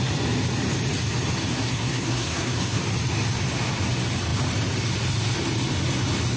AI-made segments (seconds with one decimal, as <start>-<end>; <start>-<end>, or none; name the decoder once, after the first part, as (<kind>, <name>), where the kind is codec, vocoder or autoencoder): 1.5-2.8 (codec, SNAC)